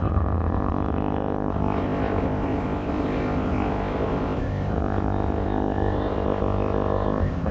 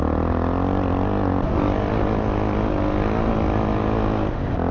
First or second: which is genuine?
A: second